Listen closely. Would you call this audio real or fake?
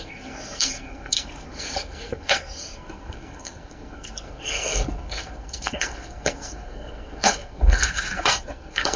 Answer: fake